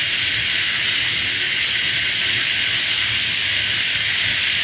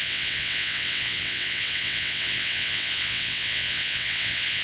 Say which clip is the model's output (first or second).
second